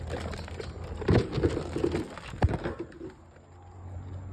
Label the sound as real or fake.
real